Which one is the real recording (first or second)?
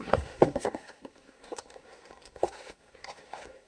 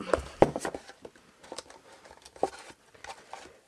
second